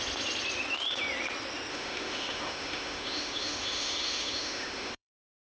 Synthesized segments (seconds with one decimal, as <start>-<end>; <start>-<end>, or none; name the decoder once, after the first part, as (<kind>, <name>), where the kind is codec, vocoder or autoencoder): 1.7-5.1 (autoencoder, DAC-VAE)

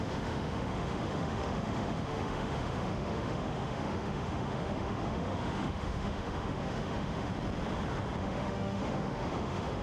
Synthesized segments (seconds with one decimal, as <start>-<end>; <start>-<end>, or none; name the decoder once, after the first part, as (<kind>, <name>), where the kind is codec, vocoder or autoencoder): 0.0-7.3 (autoencoder, DAC-VAE); 8.2-9.8